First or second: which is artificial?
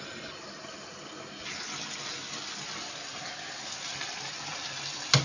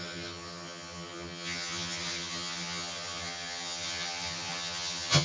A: second